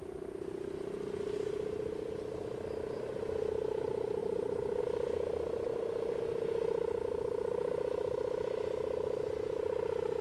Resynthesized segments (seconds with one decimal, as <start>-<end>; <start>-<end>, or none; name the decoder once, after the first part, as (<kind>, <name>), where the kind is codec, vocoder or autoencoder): none